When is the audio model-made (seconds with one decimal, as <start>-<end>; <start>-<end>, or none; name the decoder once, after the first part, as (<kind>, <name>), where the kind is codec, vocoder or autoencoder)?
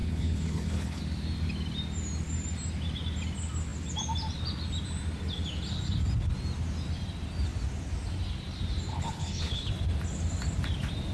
0.0-1.0 (codec, HILCodec); 8.9-9.7